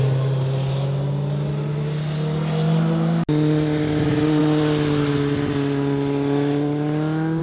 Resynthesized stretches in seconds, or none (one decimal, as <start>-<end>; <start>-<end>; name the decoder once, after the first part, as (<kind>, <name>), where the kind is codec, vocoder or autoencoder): none